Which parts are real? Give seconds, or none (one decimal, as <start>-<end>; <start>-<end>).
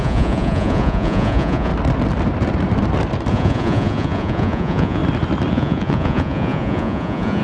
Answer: 1.7-3.3; 5.0-5.5